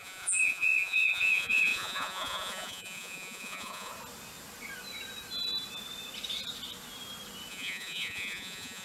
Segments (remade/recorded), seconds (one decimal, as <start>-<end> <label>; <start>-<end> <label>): 0.0-3.9 remade; 3.9-7.5 recorded; 7.5-8.8 remade